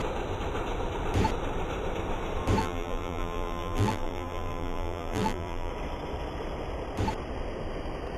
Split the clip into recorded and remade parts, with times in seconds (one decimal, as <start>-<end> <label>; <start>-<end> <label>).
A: 0.0-2.6 recorded; 2.6-5.7 remade; 5.7-8.2 recorded